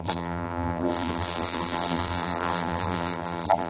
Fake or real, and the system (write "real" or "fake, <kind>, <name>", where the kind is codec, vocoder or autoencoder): fake, vocoder, BigVGAN v2